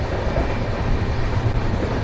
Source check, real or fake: real